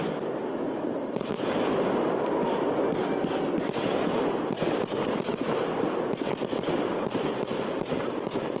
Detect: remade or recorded recorded